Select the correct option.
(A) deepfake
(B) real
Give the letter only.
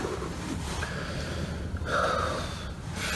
B